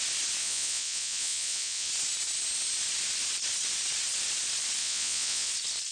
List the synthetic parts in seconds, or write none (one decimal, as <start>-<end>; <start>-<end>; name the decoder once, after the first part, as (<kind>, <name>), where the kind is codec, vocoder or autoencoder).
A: 0.4-1.9 (vocoder, Vocos); 4.8-5.5